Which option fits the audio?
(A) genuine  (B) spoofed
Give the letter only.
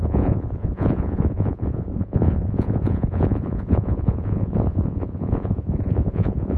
B